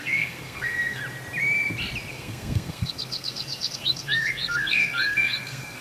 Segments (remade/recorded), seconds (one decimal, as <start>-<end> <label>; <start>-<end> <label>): 0.0-1.0 remade; 1.0-2.1 recorded; 2.1-5.8 remade